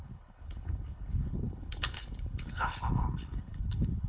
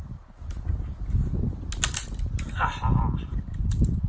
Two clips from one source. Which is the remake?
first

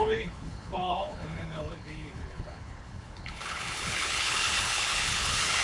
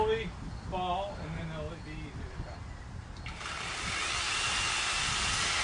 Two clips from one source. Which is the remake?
first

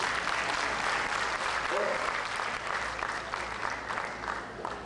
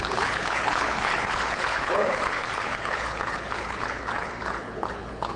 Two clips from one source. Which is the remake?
second